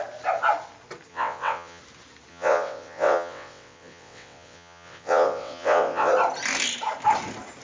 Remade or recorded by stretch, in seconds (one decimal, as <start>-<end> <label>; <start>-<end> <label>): 0.0-1.1 recorded; 1.1-1.8 remade; 1.8-2.3 recorded; 2.3-6.1 remade; 6.1-7.6 recorded